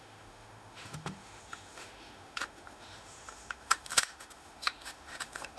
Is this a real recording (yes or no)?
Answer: no